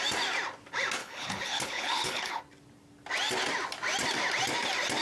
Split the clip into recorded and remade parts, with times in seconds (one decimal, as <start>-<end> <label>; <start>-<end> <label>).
0.0-1.0 recorded; 1.0-2.4 remade; 2.4-5.0 recorded